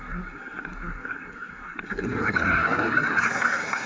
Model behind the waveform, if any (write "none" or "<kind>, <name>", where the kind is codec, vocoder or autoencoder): codec, SNAC